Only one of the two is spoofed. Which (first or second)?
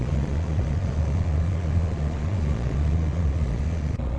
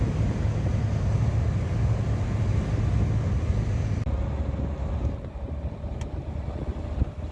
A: first